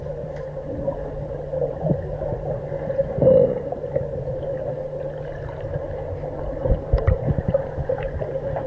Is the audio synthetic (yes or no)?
no